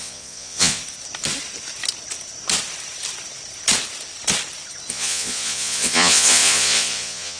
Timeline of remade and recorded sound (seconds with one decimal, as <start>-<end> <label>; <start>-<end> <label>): 0.0-0.8 remade; 0.8-4.9 recorded; 4.9-7.4 remade

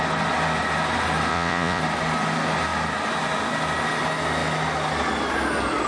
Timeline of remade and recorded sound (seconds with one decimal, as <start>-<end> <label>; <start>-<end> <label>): 0.0-1.3 recorded; 1.3-1.8 remade; 1.8-5.9 recorded

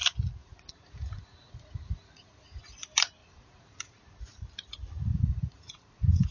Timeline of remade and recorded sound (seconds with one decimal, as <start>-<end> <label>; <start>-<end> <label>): 0.0-0.4 recorded; 0.4-2.6 remade; 2.6-3.2 recorded; 3.2-4.0 remade; 4.0-5.1 recorded; 5.1-6.3 remade